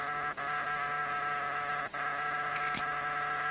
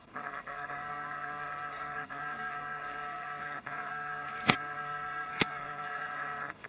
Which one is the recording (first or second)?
first